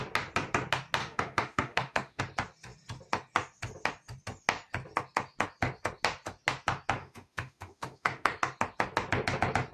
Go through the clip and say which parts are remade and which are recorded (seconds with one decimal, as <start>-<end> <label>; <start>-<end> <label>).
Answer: 0.0-1.0 recorded; 1.0-2.2 remade; 2.2-7.0 recorded; 7.0-8.3 remade; 8.3-9.7 recorded